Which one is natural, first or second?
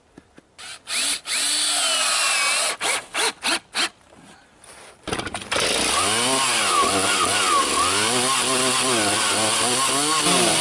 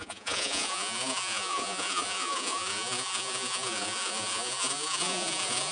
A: first